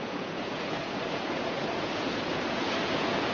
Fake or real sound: fake